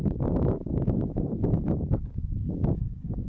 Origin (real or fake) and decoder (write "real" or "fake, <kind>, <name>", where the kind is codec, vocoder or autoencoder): fake, codec, DAC